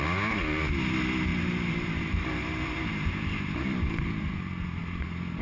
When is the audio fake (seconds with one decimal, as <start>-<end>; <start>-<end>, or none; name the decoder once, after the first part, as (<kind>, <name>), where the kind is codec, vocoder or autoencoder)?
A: 1.3-4.3 (vocoder, BigVGAN v2)